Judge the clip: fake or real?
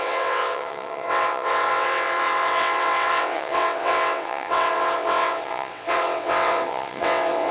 fake